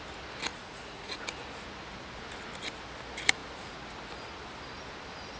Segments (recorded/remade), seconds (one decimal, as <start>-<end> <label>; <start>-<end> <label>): 0.0-0.5 recorded; 0.5-1.2 remade; 1.2-5.4 recorded